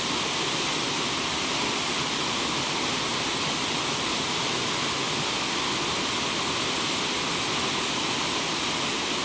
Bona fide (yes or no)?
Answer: yes